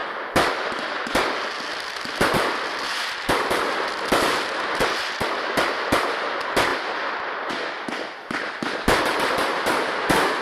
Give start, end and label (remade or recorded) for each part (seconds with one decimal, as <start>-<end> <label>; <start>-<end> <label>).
0.0-10.4 recorded